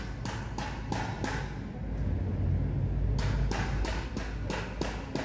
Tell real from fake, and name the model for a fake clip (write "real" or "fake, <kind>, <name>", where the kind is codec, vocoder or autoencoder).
real